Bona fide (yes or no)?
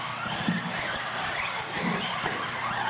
yes